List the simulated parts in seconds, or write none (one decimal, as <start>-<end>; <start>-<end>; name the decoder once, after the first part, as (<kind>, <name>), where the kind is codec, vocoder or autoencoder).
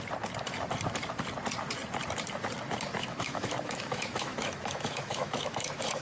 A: 3.0-6.0 (autoencoder, DAC-VAE)